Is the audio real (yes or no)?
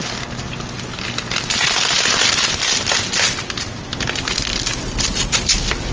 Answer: yes